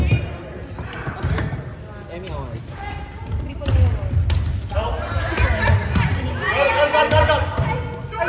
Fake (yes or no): no